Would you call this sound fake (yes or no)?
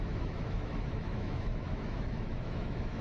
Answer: yes